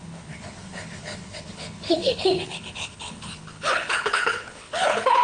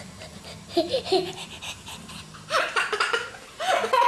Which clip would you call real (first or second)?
second